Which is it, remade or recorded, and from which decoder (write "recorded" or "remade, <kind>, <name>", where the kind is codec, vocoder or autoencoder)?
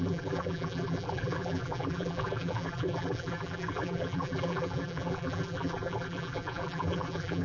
remade, vocoder, BigVGAN v2